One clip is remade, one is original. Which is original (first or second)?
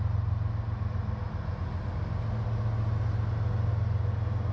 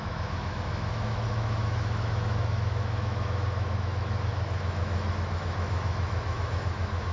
first